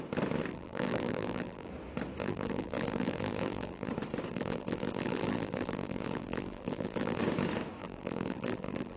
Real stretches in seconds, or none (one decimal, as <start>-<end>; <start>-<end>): 0.0-0.5; 1.7-2.2; 3.9-4.3; 7.2-7.8

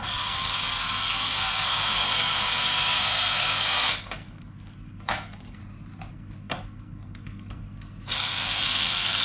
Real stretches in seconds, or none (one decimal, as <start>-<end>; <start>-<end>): 5.6-6.1

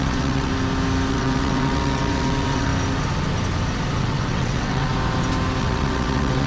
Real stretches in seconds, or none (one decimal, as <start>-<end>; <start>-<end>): 0.5-1.1; 2.7-4.0; 4.9-5.6

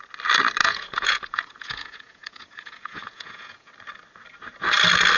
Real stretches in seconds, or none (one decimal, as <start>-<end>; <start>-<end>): 0.0-0.6; 3.7-5.2

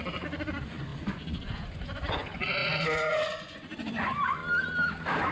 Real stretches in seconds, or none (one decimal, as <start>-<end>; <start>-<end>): 4.4-5.3

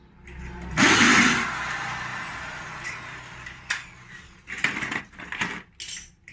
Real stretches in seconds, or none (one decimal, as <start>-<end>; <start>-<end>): 0.0-6.3

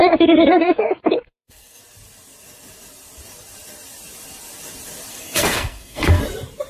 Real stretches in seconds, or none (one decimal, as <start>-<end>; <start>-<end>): 1.8-5.1; 6.2-6.7

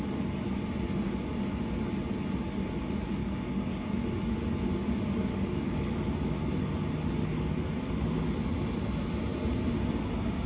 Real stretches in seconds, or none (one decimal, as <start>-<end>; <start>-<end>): 0.0-3.2; 3.8-5.3; 6.1-10.5